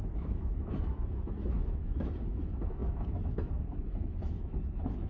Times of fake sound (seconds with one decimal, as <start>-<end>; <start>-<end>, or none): 0.0-5.1